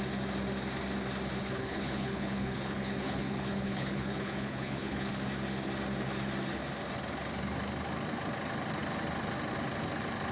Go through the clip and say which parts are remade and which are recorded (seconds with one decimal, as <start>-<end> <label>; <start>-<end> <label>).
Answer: 0.0-1.4 recorded; 1.4-5.1 remade; 5.1-10.3 recorded